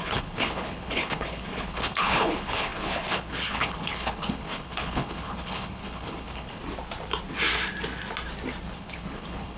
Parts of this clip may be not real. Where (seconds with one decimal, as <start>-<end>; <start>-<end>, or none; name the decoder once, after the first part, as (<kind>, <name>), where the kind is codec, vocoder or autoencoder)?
0.0-6.6 (codec, HILCodec); 8.7-9.6